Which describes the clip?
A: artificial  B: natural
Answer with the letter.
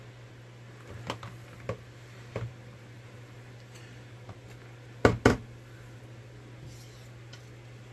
B